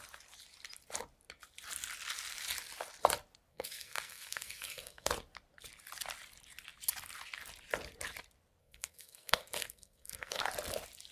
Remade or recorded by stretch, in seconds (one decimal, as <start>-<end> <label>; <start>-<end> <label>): 0.0-3.5 recorded; 3.5-5.1 remade; 5.1-8.6 recorded; 8.6-10.4 remade; 10.4-11.1 recorded